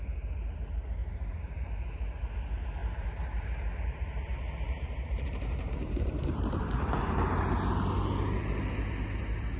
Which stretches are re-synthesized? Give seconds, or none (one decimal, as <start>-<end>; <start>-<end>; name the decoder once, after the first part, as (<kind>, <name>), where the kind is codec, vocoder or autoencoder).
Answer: 1.0-1.7 (vocoder, BigVGAN v2); 2.8-7.0